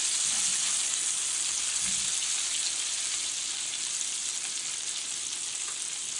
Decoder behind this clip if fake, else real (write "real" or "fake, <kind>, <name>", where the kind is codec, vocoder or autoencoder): real